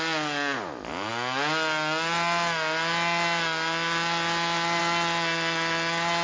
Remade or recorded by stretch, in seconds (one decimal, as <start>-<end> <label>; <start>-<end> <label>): 0.0-6.2 recorded

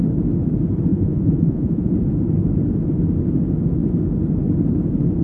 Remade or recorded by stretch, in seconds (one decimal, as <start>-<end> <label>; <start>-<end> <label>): 0.0-0.9 recorded; 0.9-1.9 remade; 1.9-5.2 recorded

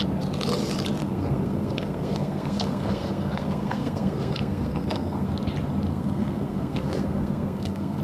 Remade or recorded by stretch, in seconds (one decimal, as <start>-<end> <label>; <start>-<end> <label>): 0.0-1.0 recorded; 1.0-5.3 remade; 5.3-5.9 recorded; 5.9-8.0 remade

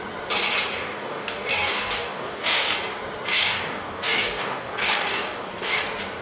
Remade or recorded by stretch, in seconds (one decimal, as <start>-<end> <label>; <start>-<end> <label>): 0.0-0.7 recorded; 0.7-2.8 remade; 2.8-3.3 recorded; 3.3-5.8 remade; 5.8-6.2 recorded

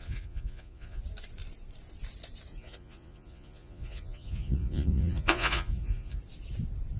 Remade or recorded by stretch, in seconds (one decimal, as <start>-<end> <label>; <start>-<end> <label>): 0.0-1.0 remade; 1.0-2.5 recorded; 2.5-6.2 remade; 6.2-7.0 recorded

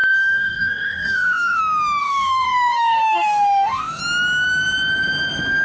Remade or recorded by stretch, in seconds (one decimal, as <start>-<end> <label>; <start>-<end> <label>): 0.0-1.6 remade; 1.6-2.0 recorded; 2.0-4.0 remade; 4.0-5.6 recorded

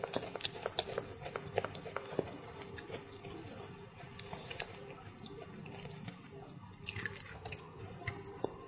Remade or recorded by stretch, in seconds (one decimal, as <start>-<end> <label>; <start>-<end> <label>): 0.0-7.3 recorded; 7.3-7.8 remade; 7.8-8.7 recorded

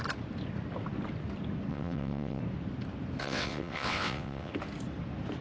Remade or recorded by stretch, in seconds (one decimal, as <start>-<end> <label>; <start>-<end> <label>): 0.0-1.7 recorded; 1.7-2.4 remade; 2.4-3.2 recorded; 3.2-4.5 remade; 4.5-5.4 recorded